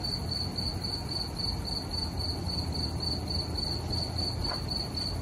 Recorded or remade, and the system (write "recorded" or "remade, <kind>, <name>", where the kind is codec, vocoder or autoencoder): recorded